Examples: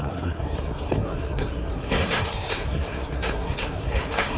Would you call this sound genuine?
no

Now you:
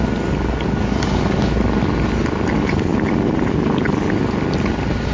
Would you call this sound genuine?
yes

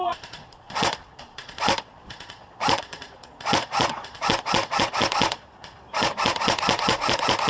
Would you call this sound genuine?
no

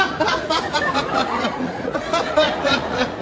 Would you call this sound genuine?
no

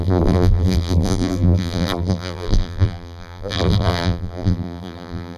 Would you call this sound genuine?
no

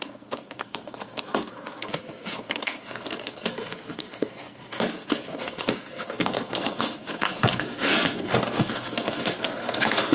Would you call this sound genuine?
no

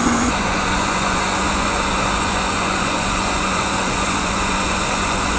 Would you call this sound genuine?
no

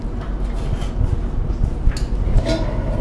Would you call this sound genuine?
yes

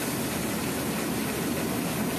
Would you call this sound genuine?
yes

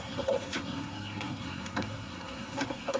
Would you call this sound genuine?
no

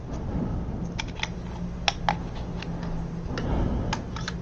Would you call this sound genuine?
yes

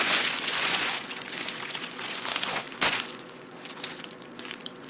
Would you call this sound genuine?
no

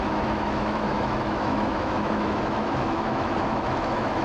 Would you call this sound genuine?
no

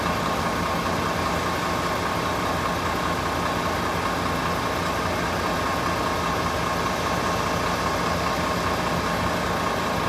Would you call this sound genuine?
yes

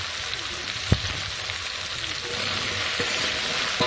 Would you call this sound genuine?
yes